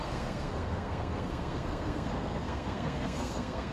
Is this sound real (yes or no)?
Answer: no